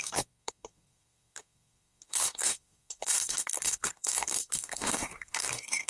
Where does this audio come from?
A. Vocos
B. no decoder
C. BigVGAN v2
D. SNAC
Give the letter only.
D